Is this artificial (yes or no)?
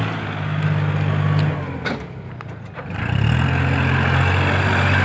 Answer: no